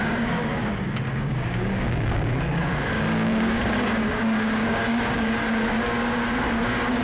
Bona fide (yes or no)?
no